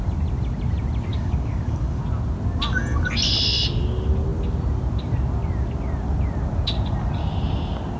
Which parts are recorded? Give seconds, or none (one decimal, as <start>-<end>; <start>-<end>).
0.0-1.1; 2.0-8.0